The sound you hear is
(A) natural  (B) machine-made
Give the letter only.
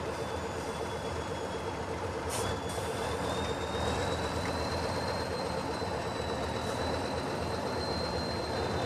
B